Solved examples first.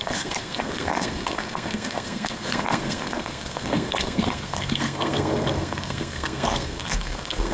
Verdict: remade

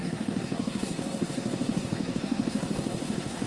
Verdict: remade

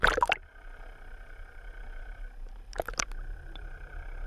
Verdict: recorded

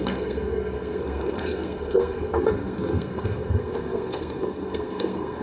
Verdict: remade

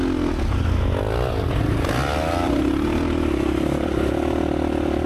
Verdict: recorded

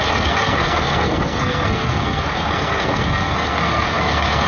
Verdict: remade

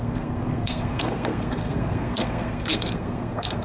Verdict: remade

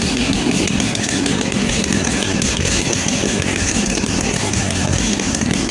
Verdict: remade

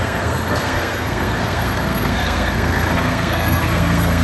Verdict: remade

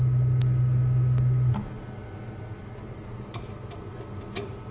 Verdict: recorded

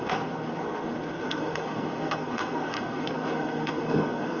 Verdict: remade